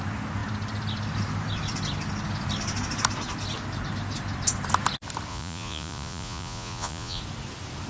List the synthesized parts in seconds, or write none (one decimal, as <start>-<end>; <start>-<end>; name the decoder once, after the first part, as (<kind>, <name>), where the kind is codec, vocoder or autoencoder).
5.3-7.2 (vocoder, Vocos)